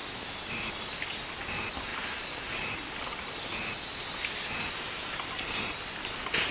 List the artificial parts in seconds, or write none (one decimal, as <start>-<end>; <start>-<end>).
none